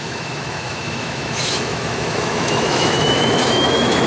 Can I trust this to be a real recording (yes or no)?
no